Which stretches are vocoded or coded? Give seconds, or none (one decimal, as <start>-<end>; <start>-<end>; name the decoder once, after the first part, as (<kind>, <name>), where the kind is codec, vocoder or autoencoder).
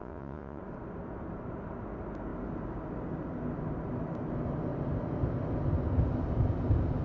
0.0-0.6 (vocoder, Vocos)